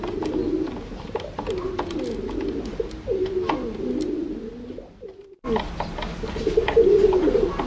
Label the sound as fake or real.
real